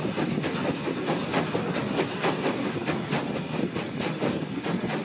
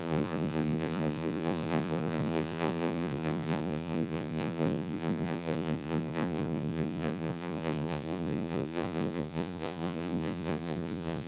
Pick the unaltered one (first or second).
first